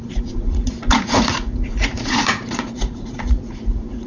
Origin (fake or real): fake